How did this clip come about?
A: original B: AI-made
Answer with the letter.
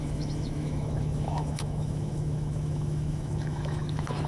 B